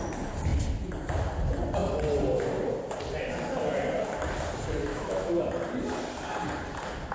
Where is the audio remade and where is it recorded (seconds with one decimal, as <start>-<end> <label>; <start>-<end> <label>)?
0.0-4.9 recorded; 4.9-5.4 remade; 5.4-7.1 recorded